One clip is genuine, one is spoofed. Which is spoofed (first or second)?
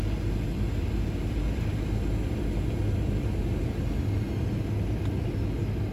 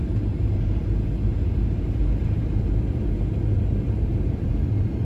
second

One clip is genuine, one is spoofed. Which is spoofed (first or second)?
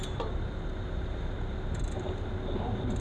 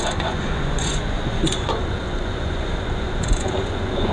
second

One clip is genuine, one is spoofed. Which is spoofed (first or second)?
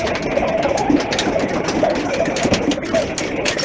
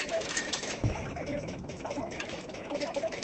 second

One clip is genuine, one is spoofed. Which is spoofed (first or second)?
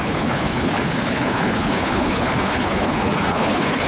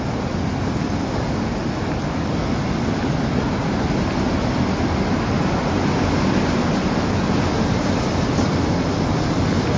first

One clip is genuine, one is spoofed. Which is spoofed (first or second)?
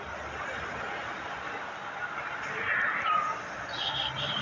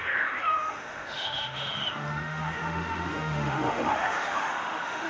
second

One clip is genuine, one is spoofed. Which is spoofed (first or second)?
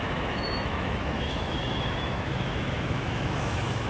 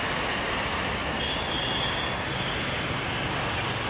first